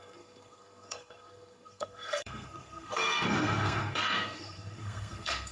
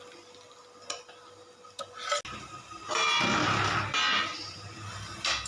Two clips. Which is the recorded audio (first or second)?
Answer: second